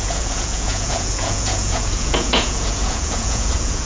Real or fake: fake